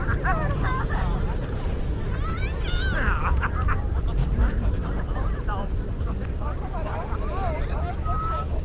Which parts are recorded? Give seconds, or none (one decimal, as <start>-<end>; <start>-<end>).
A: 0.0-8.6